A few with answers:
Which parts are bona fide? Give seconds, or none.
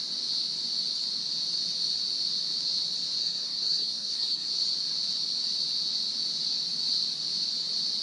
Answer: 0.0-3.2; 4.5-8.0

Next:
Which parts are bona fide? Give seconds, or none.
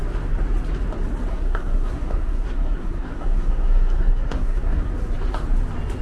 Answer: 0.0-1.3; 4.9-6.0